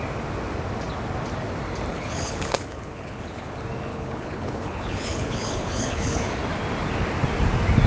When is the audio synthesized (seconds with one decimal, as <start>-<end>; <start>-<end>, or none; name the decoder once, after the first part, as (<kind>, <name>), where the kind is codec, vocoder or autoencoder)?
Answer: 1.9-3.5 (codec, HILCodec); 3.9-6.4